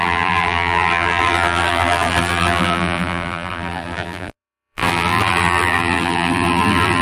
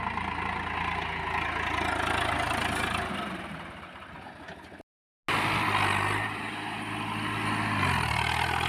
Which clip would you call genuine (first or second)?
second